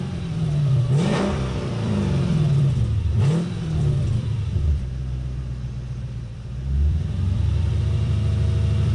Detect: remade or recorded remade